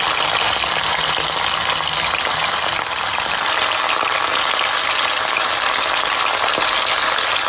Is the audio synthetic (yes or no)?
no